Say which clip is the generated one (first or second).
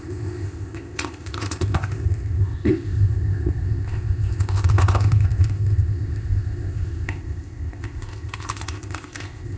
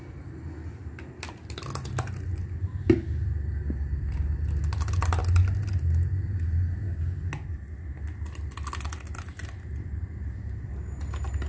first